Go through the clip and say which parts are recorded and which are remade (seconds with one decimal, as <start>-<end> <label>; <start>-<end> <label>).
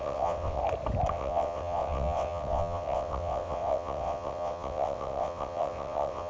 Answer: 0.0-0.6 remade; 0.6-1.1 recorded; 1.1-6.3 remade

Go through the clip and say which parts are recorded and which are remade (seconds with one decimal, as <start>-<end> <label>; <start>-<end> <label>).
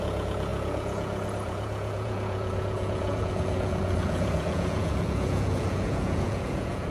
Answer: 0.0-6.9 remade